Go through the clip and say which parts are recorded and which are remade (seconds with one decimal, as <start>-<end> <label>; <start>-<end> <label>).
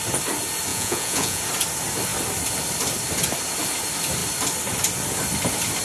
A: 0.0-0.7 recorded; 0.7-1.4 remade; 1.4-5.8 recorded